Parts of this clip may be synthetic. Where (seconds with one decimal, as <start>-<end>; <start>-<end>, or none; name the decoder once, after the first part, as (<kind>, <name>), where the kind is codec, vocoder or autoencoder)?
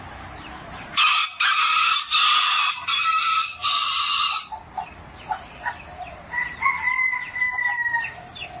0.0-1.2 (vocoder, BigVGAN v2); 2.7-8.6